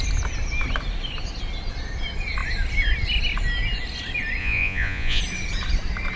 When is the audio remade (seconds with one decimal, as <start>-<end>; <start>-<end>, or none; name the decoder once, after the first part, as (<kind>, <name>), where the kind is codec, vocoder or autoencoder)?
4.4-5.2 (vocoder, Vocos)